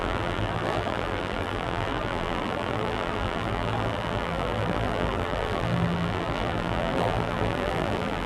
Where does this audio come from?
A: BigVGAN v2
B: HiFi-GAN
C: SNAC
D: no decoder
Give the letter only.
A